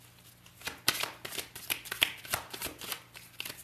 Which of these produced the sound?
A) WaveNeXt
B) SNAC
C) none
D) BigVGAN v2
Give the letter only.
C